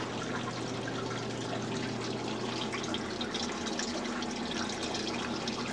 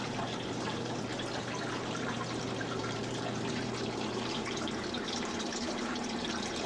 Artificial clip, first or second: second